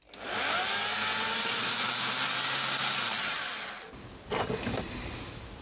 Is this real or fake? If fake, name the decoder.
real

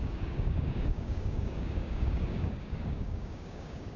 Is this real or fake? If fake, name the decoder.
fake, codec, DAC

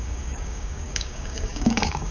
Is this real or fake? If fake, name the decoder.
fake, codec, DAC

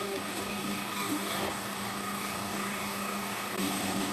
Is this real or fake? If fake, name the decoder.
fake, codec, DAC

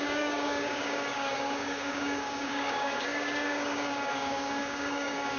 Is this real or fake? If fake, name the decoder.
fake, codec, DAC